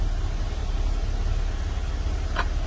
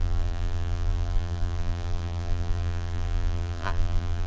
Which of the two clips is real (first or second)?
first